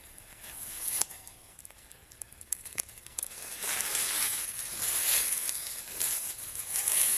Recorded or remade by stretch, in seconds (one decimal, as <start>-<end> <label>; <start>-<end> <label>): 0.0-7.2 remade